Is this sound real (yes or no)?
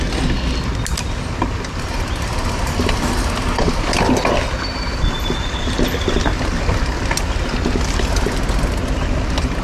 yes